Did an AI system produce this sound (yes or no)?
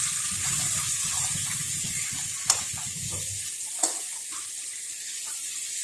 no